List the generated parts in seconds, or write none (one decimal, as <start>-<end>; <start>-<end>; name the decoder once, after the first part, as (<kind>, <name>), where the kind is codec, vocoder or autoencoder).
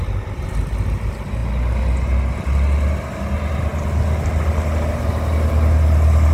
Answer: none